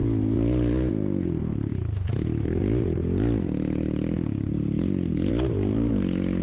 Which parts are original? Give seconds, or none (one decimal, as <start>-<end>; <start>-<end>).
0.0-6.4